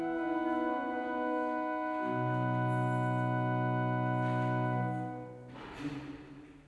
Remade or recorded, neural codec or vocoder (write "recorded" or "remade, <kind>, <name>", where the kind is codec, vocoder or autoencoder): recorded